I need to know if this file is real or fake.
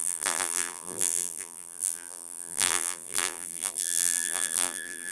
fake